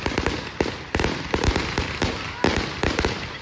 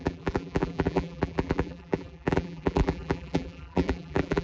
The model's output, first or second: second